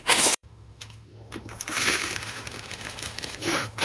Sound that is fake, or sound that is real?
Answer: fake